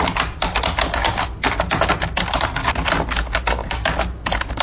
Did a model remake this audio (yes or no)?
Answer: no